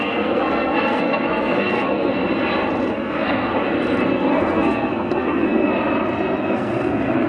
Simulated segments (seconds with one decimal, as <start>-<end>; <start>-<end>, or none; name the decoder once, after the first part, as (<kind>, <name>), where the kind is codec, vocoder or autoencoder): 0.0-2.2 (codec, SNAC); 2.9-3.5; 4.3-5.7; 6.4-7.3